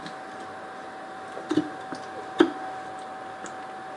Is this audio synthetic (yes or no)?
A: no